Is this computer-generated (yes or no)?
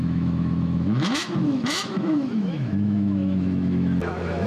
yes